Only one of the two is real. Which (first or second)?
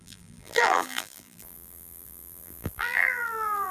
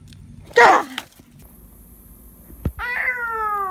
second